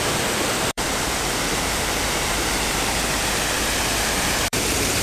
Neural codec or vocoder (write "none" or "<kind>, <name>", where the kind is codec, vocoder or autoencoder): vocoder, BigVGAN v2